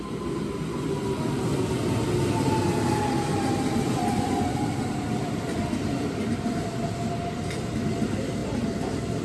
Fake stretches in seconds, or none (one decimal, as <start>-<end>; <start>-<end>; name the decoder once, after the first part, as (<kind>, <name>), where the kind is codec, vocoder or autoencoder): none